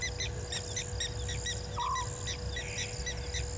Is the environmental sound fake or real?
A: real